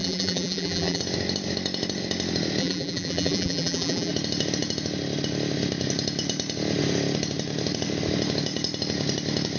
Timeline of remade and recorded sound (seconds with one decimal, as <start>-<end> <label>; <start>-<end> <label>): 0.0-1.0 remade; 1.0-2.6 recorded; 2.6-4.1 remade; 4.1-9.6 recorded